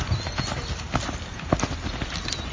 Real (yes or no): yes